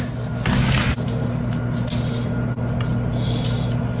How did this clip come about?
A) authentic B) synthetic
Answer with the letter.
A